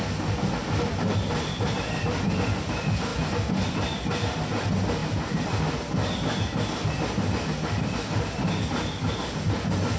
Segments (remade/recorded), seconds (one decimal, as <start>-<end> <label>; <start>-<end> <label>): 0.0-3.1 recorded; 3.1-3.7 remade; 3.7-5.0 recorded; 5.0-5.5 remade; 5.5-10.0 recorded